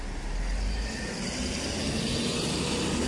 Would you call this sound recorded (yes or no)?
yes